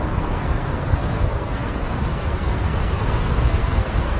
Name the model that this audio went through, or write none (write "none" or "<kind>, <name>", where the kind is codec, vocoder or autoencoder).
codec, SNAC